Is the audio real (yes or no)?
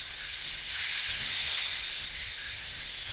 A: no